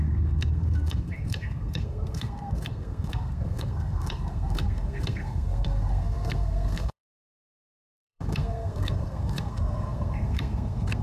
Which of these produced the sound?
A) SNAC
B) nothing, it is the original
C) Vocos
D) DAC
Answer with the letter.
A